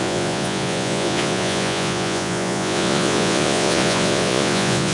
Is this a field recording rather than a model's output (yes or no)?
no